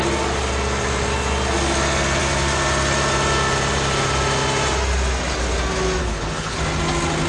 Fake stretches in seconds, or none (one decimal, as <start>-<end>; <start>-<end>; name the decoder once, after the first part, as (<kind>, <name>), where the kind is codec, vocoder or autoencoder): 6.0-6.6 (codec, HILCodec)